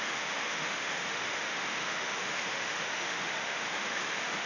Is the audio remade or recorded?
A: remade